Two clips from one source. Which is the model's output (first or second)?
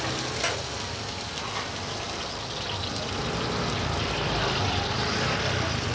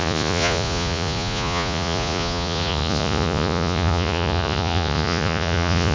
second